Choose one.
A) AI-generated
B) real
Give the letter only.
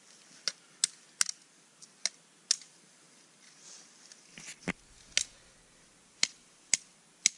B